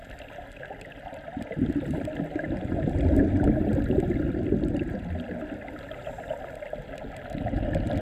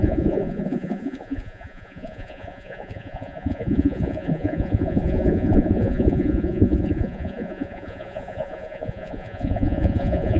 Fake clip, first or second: second